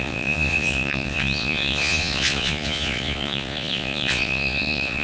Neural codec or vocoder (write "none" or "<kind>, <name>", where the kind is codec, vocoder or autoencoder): vocoder, Vocos